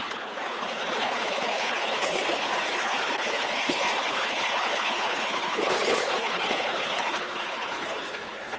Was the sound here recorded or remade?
remade